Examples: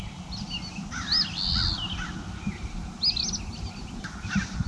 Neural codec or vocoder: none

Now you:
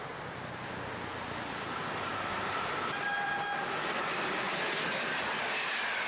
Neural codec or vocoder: none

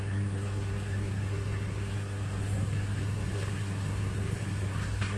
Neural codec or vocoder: codec, SNAC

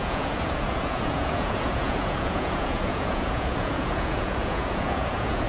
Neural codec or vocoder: vocoder, Vocos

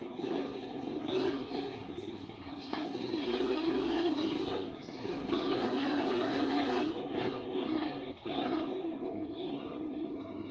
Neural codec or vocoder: codec, SNAC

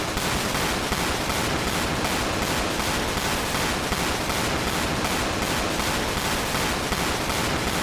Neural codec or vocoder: none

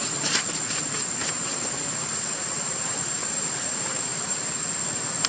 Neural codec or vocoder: vocoder, BigVGAN v2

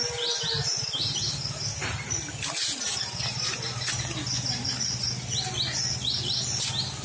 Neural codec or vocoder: none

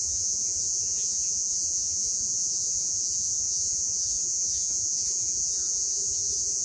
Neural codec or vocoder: vocoder, Vocos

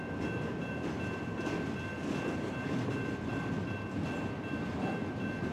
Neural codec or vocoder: vocoder, BigVGAN v2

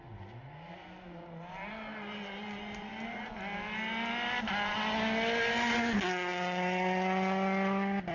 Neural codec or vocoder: none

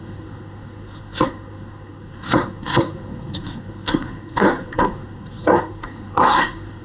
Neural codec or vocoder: codec, SNAC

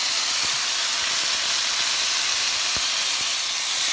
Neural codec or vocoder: none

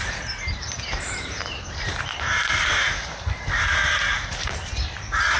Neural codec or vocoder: vocoder, BigVGAN v2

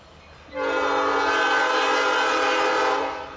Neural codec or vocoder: none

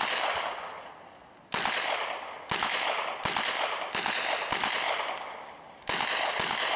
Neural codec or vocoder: none